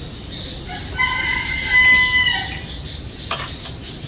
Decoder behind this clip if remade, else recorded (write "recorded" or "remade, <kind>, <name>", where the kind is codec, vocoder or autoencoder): recorded